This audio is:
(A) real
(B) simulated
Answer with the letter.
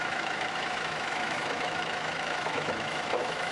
B